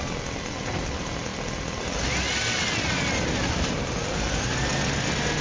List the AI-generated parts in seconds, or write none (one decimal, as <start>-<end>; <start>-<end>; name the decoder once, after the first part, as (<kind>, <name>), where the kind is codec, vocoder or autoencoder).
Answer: none